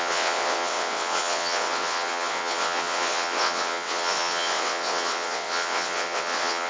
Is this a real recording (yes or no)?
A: no